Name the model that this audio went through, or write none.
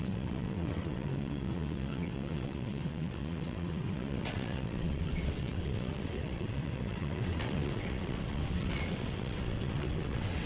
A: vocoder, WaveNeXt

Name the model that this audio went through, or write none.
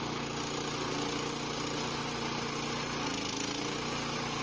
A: none